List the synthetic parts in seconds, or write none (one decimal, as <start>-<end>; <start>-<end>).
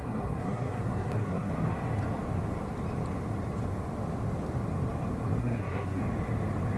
0.0-1.5; 5.4-6.0